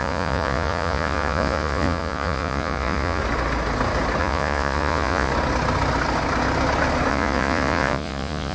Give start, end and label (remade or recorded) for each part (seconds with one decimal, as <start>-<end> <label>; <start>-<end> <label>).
0.0-3.2 remade; 3.2-4.2 recorded; 4.2-5.3 remade; 5.3-7.1 recorded; 7.1-8.5 remade

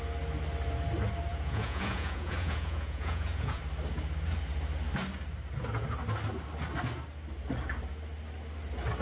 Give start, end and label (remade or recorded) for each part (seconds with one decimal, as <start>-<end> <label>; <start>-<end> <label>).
0.0-1.3 recorded; 1.3-3.6 remade; 3.6-9.0 recorded

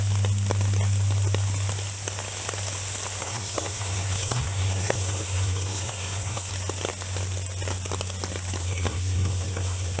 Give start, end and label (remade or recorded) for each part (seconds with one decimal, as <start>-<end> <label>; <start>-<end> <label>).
0.0-3.2 recorded; 3.2-6.5 remade; 6.5-8.6 recorded; 8.6-10.0 remade

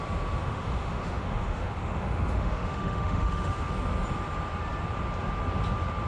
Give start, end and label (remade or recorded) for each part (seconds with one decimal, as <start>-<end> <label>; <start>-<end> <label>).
0.0-0.4 recorded; 0.4-3.7 remade; 3.7-6.1 recorded